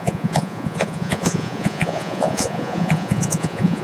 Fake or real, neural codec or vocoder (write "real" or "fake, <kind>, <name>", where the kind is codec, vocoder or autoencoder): fake, vocoder, Vocos